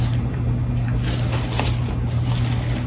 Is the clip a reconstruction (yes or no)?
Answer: no